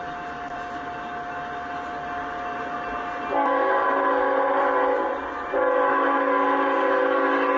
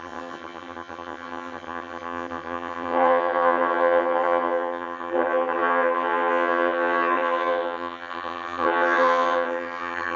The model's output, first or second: second